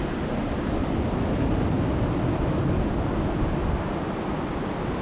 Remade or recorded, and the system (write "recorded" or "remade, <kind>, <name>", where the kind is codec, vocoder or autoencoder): recorded